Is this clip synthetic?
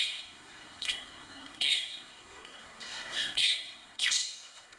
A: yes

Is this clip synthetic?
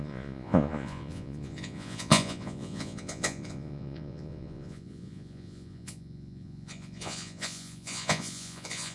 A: yes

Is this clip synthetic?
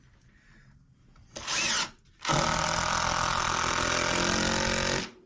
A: no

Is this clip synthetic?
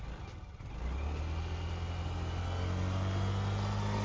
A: no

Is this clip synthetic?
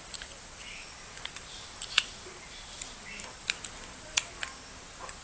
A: no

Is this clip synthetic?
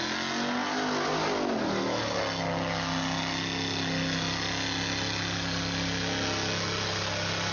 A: no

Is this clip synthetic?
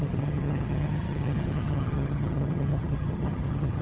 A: yes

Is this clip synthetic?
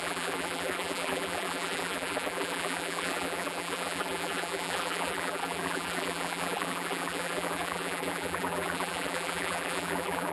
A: yes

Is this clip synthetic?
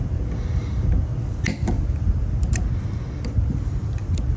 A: no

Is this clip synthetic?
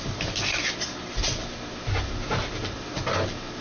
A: no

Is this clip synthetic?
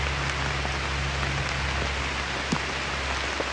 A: no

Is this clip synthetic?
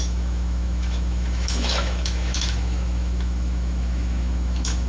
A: yes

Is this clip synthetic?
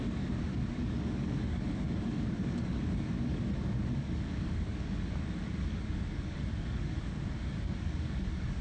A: yes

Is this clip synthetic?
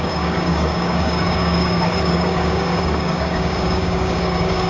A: yes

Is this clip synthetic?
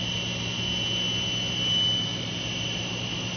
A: no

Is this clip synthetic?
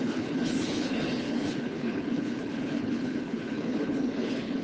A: yes